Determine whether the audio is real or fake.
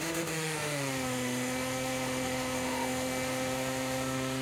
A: fake